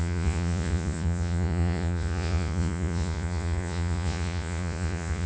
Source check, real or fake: fake